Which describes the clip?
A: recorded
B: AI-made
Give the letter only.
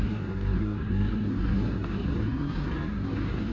B